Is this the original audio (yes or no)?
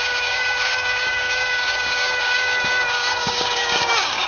no